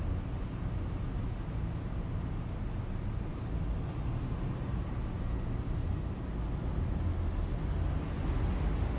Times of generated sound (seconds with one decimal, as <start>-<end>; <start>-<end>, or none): none